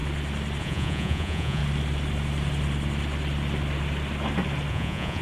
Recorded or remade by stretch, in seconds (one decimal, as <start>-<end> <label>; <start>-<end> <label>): 0.0-0.6 recorded; 0.6-1.6 remade; 1.6-4.7 recorded; 4.7-5.2 remade